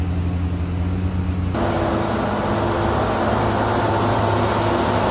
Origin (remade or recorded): recorded